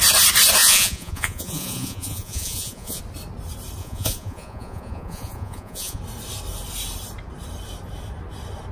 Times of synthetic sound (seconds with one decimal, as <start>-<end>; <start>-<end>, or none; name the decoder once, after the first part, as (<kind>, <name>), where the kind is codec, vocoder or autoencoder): 0.6-3.0 (vocoder, Vocos); 3.8-6.0